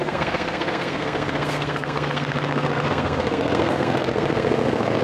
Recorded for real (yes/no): no